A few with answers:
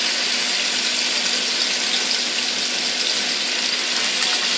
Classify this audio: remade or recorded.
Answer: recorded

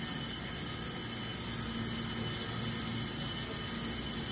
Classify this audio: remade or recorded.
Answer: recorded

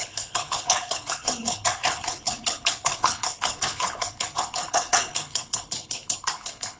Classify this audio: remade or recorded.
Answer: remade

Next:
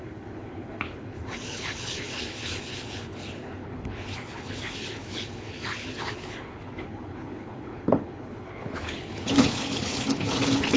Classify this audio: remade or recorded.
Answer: remade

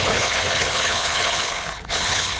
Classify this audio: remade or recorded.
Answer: remade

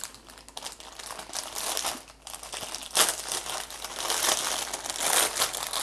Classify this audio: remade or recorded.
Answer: recorded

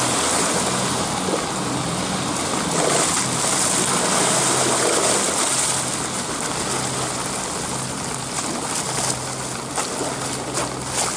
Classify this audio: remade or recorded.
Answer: recorded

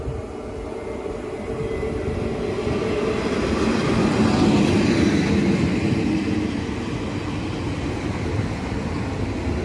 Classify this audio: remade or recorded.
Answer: recorded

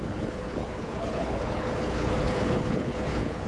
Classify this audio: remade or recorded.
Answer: remade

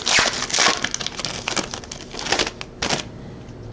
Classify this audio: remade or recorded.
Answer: recorded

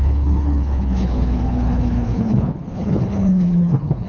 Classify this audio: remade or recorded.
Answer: remade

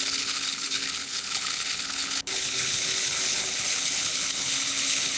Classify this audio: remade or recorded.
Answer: remade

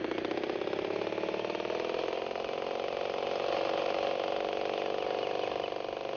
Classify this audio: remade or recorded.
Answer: recorded